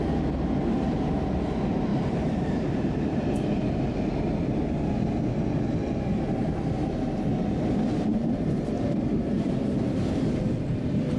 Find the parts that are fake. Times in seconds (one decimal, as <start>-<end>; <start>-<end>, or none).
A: 1.9-4.2; 8.1-11.2